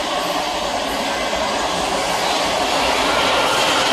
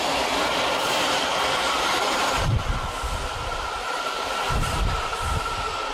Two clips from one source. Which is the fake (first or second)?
second